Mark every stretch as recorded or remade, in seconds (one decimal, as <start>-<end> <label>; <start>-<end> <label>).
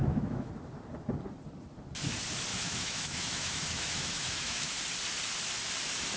0.0-0.5 remade; 0.5-2.5 recorded; 2.5-4.7 remade; 4.7-6.2 recorded